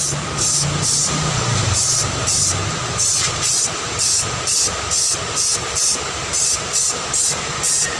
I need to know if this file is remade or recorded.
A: remade